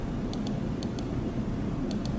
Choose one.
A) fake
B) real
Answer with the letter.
B